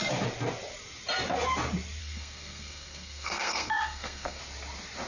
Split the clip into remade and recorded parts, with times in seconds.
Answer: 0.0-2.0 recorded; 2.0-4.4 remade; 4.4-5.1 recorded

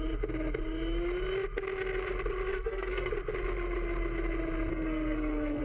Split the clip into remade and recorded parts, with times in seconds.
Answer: 0.0-2.5 recorded; 2.5-3.1 remade; 3.1-4.7 recorded; 4.7-5.6 remade

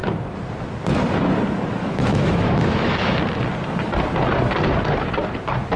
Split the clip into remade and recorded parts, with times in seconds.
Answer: 0.0-1.8 recorded; 1.8-3.2 remade; 3.2-5.8 recorded

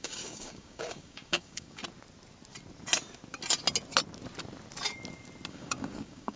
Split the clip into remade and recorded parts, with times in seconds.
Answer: 0.0-1.8 remade; 1.8-5.5 recorded; 5.5-6.4 remade

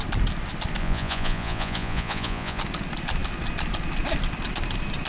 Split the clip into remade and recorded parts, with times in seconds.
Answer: 0.0-0.8 recorded; 0.8-2.6 remade; 2.6-5.1 recorded

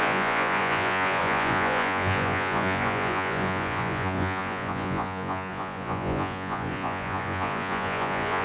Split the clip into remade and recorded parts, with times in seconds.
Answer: 0.0-8.4 remade